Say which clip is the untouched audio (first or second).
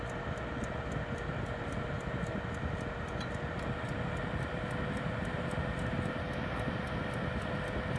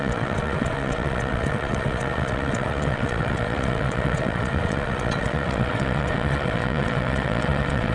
first